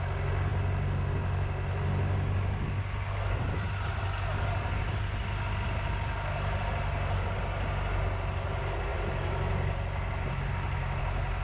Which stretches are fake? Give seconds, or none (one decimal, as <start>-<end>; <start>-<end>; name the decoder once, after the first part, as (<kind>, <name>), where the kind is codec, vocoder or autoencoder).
none